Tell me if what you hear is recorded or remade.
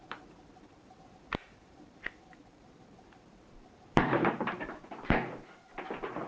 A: remade